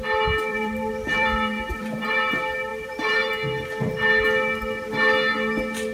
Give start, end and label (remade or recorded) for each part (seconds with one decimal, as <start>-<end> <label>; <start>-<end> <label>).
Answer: 0.0-0.5 recorded; 0.5-2.3 remade; 2.3-2.7 recorded; 2.7-3.3 remade; 3.3-5.9 recorded